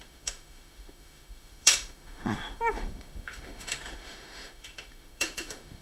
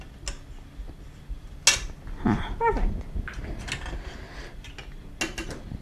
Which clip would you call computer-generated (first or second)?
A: first